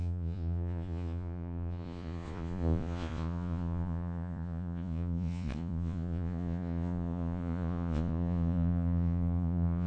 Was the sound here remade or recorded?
remade